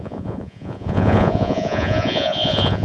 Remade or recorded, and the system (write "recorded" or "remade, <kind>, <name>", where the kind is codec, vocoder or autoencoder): remade, vocoder, Vocos